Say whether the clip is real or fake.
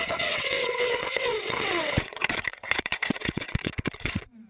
fake